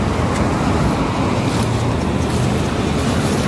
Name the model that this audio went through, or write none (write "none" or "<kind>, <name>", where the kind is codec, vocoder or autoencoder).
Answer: none